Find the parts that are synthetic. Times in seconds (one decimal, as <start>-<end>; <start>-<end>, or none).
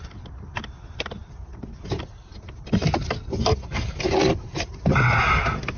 1.2-4.7